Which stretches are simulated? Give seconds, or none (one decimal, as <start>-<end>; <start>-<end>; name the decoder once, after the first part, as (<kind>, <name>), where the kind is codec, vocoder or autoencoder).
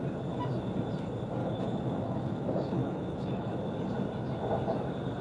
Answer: 1.4-3.6 (autoencoder, DAC-VAE)